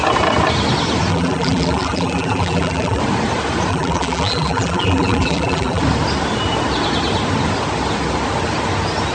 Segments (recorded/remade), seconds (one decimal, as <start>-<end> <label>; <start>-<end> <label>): 0.0-1.1 recorded; 1.1-3.0 remade; 3.0-3.7 recorded; 3.7-5.8 remade; 5.8-9.1 recorded